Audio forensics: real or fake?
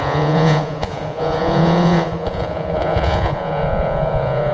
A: fake